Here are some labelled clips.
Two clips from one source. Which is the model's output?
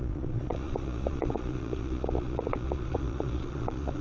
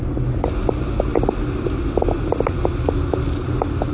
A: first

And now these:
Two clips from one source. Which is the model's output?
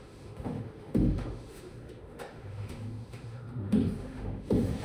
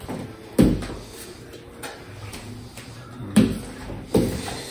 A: first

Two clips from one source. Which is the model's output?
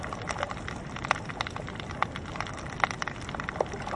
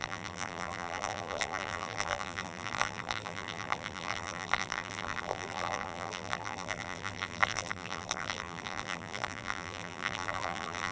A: second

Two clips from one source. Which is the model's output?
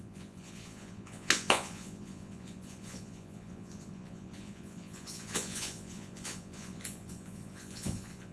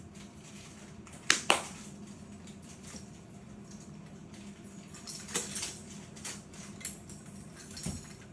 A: first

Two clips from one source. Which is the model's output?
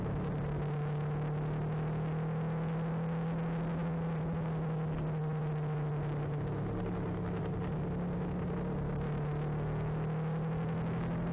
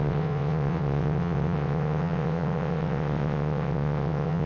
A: second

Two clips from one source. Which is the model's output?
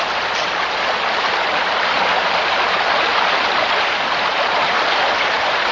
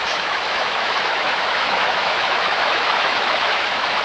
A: second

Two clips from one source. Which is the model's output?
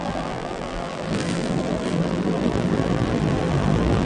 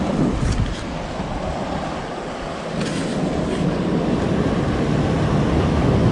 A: first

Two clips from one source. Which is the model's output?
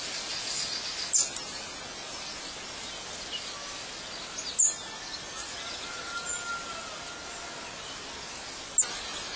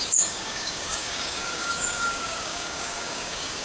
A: second